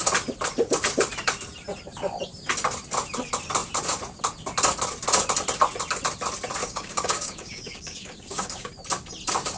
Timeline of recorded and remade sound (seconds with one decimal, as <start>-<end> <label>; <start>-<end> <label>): 0.0-6.6 recorded; 6.6-8.7 remade; 8.7-9.6 recorded